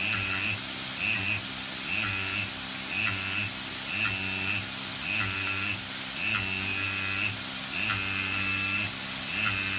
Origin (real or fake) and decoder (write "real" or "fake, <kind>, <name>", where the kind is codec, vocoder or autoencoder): real